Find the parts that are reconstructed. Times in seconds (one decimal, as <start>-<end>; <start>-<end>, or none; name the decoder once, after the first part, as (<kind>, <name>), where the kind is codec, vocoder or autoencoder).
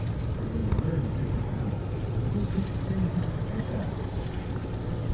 none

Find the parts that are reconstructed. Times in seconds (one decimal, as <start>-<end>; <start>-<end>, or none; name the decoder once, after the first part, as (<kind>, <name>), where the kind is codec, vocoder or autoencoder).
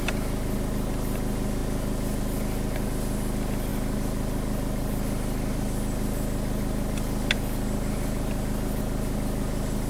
none